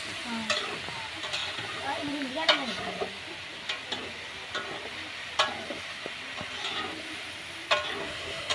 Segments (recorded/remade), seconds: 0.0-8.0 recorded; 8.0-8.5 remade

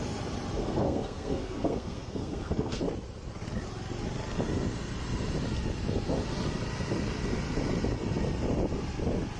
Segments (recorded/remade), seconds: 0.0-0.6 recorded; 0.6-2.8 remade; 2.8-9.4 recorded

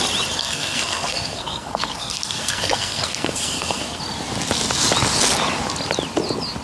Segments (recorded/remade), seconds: 0.0-0.4 recorded; 0.4-4.0 remade; 4.0-6.6 recorded

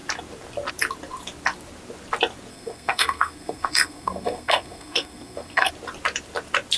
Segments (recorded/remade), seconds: 0.0-2.5 recorded; 2.5-5.7 remade; 5.7-6.8 recorded

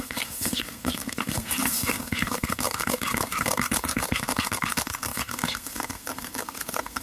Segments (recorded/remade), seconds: 0.0-7.0 remade